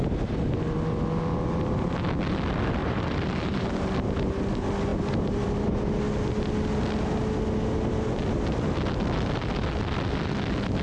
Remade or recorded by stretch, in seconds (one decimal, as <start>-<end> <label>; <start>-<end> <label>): 0.0-2.8 recorded; 2.8-3.7 remade; 3.7-10.8 recorded